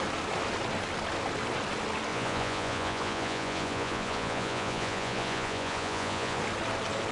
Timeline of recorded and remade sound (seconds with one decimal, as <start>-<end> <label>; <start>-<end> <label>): 0.0-2.1 recorded; 2.1-6.4 remade; 6.4-7.1 recorded